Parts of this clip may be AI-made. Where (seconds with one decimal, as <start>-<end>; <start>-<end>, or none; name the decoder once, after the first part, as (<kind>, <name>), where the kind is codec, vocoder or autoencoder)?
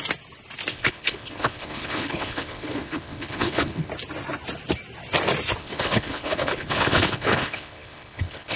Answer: 0.7-3.9 (codec, HILCodec); 5.6-8.6